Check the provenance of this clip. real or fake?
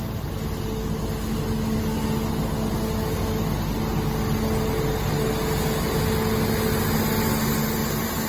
real